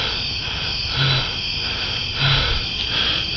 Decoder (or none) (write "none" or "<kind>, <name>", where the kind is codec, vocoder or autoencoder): none